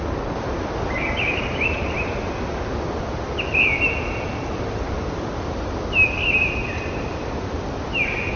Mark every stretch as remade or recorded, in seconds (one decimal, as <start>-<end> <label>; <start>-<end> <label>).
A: 0.0-6.6 recorded; 6.6-7.6 remade; 7.6-8.4 recorded

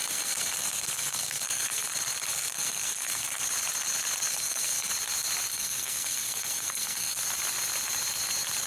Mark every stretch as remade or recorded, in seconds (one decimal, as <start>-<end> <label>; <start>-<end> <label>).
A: 0.0-1.9 remade; 1.9-2.3 recorded; 2.3-3.4 remade; 3.4-4.3 recorded; 4.3-4.9 remade; 4.9-5.5 recorded; 5.5-7.2 remade; 7.2-8.7 recorded

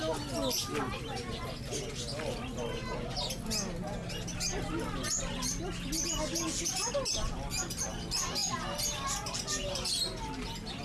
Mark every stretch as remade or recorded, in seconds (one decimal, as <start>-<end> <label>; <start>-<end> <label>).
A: 0.0-10.8 recorded

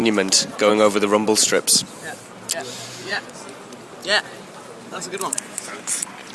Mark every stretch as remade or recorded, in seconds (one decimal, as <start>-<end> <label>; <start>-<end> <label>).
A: 0.0-3.0 recorded; 3.0-3.6 remade; 3.6-4.9 recorded; 4.9-6.3 remade